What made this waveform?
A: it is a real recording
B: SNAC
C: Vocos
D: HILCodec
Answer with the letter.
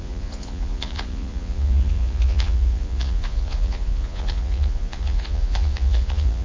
C